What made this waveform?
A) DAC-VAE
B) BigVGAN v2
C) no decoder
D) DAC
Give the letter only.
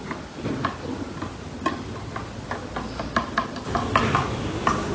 C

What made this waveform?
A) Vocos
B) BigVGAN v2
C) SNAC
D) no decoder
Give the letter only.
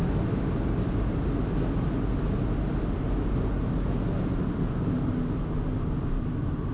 D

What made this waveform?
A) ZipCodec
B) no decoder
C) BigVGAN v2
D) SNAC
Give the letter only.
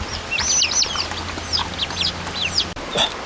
B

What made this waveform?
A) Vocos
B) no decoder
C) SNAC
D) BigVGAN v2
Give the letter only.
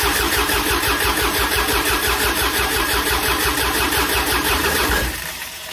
D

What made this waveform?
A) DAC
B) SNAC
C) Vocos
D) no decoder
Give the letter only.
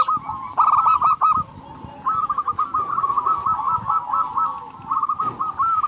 D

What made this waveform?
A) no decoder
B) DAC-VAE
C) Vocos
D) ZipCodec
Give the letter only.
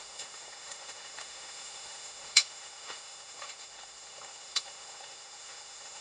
B